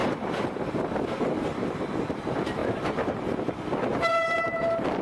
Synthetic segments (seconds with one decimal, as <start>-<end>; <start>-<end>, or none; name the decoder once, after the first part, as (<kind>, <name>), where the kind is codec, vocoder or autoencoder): 0.0-1.1 (vocoder, BigVGAN v2); 1.5-2.2; 2.6-3.5; 4.1-5.0